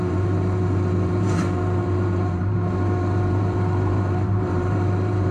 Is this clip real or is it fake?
fake